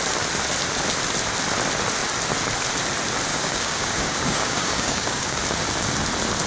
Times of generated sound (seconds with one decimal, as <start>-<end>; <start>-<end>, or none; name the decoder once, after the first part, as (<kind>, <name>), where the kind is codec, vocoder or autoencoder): 3.3-5.4 (codec, DAC)